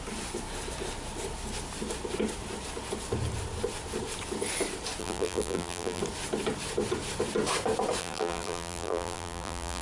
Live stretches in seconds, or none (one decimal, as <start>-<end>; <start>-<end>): 0.0-5.0; 6.0-8.0